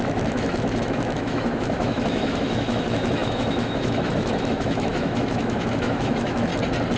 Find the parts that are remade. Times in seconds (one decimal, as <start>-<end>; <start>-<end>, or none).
0.0-6.5